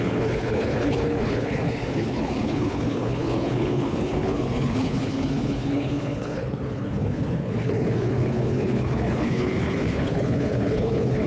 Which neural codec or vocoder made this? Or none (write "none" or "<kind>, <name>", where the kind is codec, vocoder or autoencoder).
codec, HILCodec